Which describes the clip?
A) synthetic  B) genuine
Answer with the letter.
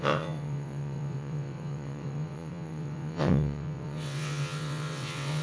A